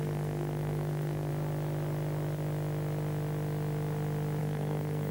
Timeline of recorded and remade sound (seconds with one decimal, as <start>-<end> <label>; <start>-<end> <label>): 0.0-1.3 remade; 1.3-4.4 recorded; 4.4-5.1 remade